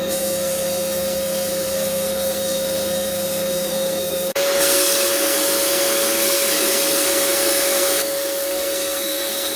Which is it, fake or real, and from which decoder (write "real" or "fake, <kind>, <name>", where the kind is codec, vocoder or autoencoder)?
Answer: fake, codec, SNAC